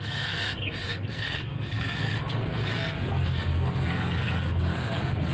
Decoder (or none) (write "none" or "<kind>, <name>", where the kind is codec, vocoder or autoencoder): codec, SNAC